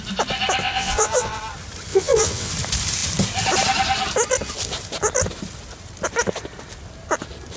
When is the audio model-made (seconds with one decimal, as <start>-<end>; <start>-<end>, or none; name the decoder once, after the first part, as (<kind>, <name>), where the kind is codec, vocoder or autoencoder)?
0.6-1.4 (vocoder, WaveNeXt); 1.9-2.5